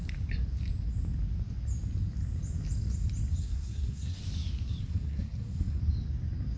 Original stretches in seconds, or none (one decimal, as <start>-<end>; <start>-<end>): 0.0-3.4; 4.2-4.8; 5.8-6.6